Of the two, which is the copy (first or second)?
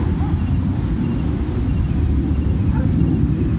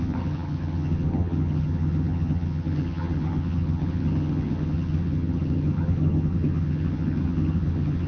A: second